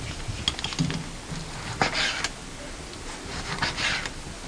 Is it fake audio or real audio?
real